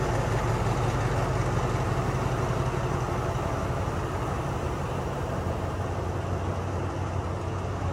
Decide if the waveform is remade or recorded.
recorded